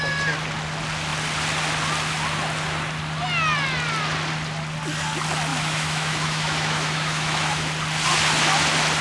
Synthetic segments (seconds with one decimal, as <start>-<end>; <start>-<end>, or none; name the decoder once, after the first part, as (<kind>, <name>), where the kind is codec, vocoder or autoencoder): 5.5-7.7 (autoencoder, DAC-VAE)